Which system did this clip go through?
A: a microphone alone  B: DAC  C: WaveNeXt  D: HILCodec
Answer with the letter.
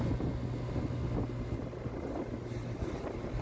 A